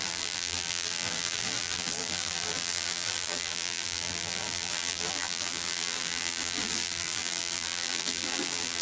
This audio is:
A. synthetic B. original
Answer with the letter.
A